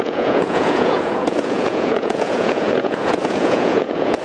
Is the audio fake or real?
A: fake